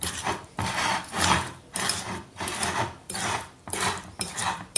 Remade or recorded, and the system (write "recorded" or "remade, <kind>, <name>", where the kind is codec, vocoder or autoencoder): remade, vocoder, BigVGAN v2